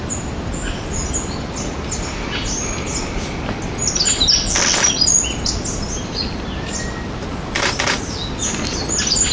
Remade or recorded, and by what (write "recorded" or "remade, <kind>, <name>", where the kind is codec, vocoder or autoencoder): recorded